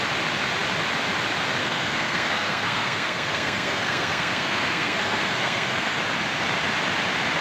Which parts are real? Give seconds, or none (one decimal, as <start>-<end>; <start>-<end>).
0.0-1.6; 6.0-7.4